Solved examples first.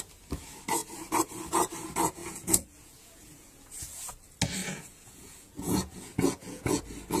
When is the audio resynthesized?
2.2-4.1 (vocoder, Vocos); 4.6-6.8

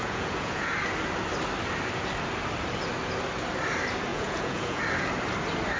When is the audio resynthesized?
0.0-0.7 (vocoder, Vocos); 4.1-4.8